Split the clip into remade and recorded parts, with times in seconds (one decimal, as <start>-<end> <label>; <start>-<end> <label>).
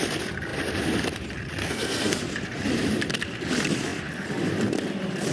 0.0-1.6 recorded; 1.6-2.2 remade; 2.2-5.3 recorded